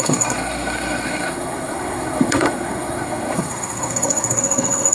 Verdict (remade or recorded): remade